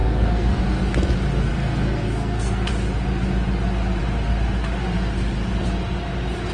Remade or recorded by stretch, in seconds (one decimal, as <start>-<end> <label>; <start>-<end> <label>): 0.0-0.6 remade; 0.6-1.5 recorded; 1.5-2.7 remade; 2.7-6.5 recorded